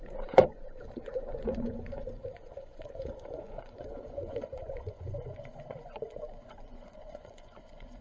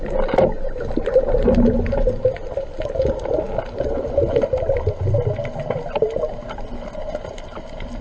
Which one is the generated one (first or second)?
first